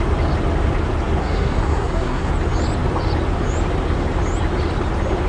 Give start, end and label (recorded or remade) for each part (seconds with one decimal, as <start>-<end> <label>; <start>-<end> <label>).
0.0-1.2 recorded; 1.2-2.3 remade; 2.3-5.3 recorded